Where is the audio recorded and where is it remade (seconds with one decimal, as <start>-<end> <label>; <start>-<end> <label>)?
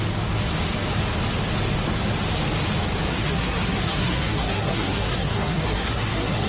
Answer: 0.0-3.1 recorded; 3.1-6.5 remade